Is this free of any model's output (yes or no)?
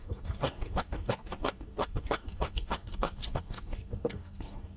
no